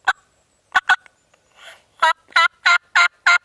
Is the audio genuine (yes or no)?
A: yes